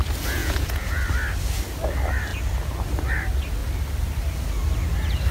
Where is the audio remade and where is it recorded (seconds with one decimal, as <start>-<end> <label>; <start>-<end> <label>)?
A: 0.0-0.4 recorded; 0.4-1.0 remade; 1.0-5.3 recorded